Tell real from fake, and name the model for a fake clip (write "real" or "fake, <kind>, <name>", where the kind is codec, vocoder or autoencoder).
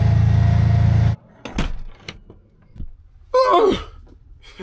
real